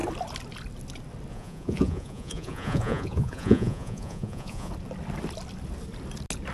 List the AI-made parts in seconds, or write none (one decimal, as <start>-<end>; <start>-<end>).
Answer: 1.3-4.7